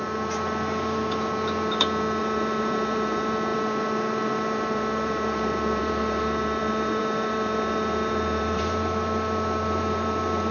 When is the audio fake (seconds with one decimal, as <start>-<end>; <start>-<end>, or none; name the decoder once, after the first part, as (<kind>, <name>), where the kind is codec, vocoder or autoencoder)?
0.0-1.3 (vocoder, BigVGAN v2); 2.2-10.5